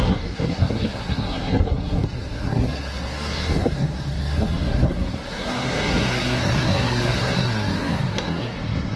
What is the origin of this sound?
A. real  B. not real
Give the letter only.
B